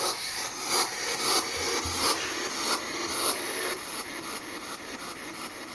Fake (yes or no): no